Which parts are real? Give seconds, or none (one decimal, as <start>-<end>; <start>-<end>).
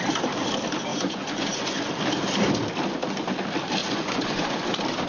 0.0-0.9; 1.9-3.8; 4.6-5.1